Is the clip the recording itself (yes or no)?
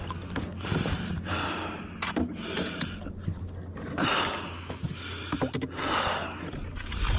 yes